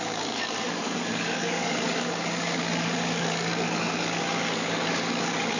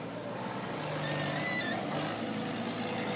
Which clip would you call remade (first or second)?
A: first